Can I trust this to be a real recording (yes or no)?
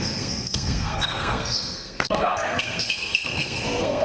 no